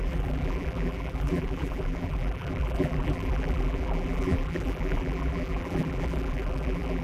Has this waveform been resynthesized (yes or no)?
yes